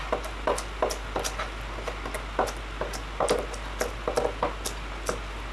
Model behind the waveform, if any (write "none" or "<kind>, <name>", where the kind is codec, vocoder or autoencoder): none